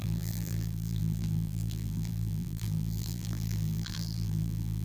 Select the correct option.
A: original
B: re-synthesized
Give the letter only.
B